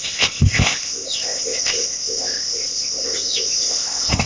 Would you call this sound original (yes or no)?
no